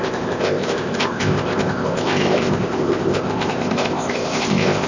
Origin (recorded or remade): remade